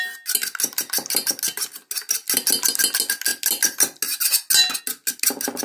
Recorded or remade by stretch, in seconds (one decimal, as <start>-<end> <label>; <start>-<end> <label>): 0.0-5.6 recorded